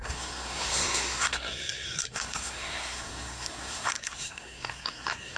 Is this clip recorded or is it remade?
remade